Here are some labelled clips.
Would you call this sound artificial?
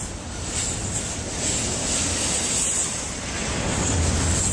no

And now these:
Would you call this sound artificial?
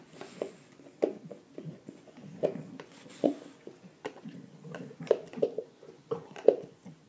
yes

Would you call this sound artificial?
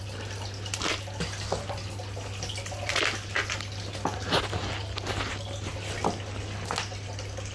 no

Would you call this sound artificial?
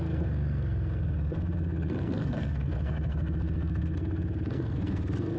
yes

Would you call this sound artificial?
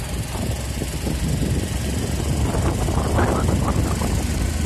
no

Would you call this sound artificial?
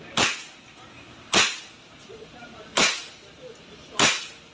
no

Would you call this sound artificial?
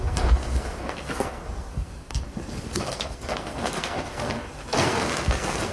yes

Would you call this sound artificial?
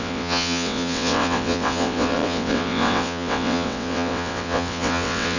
yes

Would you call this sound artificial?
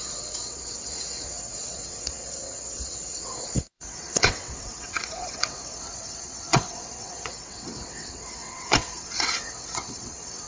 yes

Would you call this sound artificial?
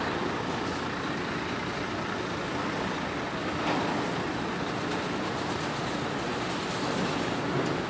no